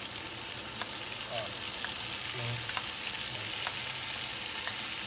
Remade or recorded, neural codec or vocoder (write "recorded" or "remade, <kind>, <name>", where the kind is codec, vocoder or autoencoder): recorded